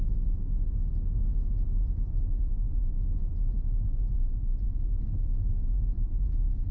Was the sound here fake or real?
real